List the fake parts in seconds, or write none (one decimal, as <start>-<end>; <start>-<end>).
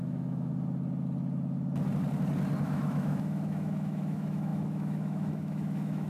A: 0.0-0.5; 2.6-6.1